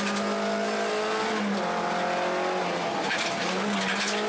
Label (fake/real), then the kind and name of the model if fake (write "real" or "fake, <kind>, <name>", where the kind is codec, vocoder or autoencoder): real